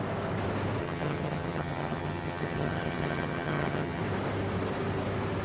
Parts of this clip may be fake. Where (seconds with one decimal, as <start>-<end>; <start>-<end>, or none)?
0.8-4.0